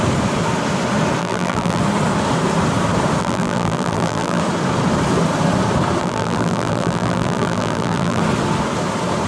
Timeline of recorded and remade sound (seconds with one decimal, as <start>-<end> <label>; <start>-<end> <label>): 0.0-1.2 recorded; 1.2-1.8 remade; 1.8-3.2 recorded; 3.2-4.4 remade; 4.4-6.0 recorded; 6.0-8.2 remade; 8.2-9.3 recorded